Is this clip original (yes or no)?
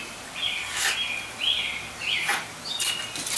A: yes